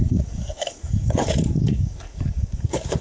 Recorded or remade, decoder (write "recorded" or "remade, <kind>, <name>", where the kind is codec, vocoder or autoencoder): remade, codec, DAC